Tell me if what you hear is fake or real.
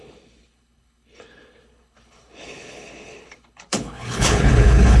fake